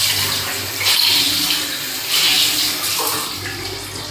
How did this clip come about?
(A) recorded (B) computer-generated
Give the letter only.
A